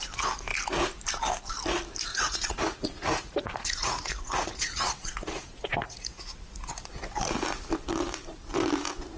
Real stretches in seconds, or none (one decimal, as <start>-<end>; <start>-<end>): 0.0-2.1; 6.7-9.2